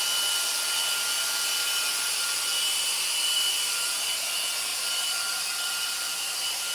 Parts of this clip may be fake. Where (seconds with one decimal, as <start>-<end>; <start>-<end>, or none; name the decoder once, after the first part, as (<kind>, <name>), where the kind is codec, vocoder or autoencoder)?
2.5-3.9 (vocoder, BigVGAN v2); 4.7-6.7